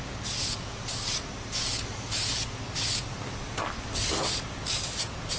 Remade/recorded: recorded